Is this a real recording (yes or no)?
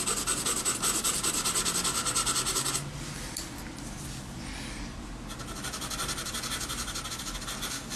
yes